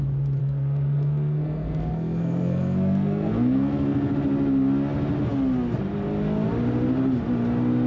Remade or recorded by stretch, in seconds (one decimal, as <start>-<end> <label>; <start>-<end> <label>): 0.0-0.4 recorded; 0.4-4.1 remade; 4.1-7.9 recorded